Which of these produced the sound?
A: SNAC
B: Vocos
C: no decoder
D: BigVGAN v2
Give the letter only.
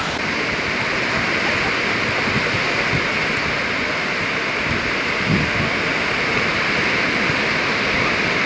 C